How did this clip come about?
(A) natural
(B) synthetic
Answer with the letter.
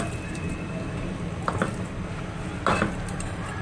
A